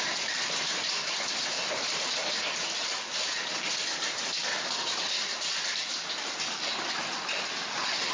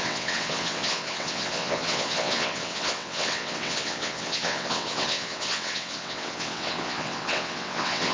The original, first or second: first